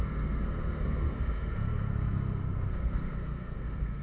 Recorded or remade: remade